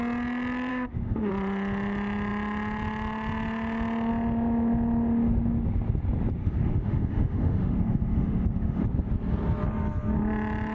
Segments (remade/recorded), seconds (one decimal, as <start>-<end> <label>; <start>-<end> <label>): 0.0-0.7 recorded; 0.7-1.3 remade; 1.3-6.4 recorded; 6.4-8.8 remade; 8.8-10.7 recorded